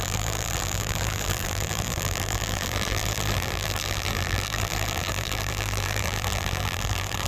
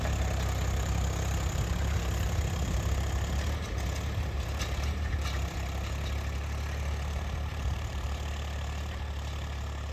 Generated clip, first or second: first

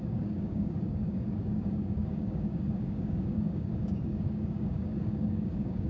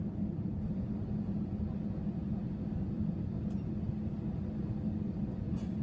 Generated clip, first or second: first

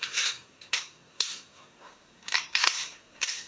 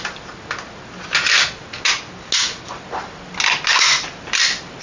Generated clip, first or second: first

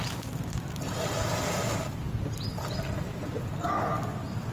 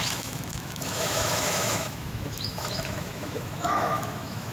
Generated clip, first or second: second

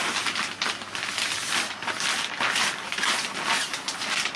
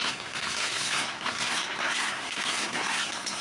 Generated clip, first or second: second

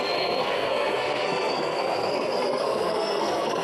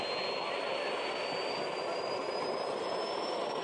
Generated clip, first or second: first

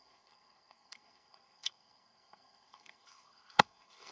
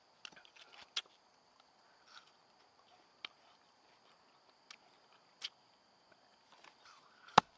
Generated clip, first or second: first